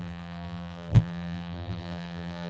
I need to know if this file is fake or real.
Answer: fake